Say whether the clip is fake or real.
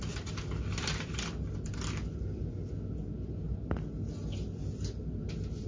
real